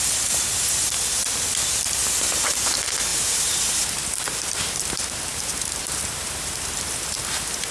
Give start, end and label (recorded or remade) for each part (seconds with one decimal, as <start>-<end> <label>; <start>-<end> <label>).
0.0-0.5 recorded; 0.5-1.5 remade; 1.5-3.1 recorded; 3.1-7.7 remade